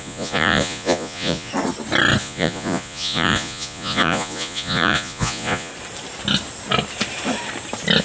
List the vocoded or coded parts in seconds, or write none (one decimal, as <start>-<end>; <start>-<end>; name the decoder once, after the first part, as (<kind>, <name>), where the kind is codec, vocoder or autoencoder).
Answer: 0.0-1.5 (vocoder, Vocos); 2.2-5.7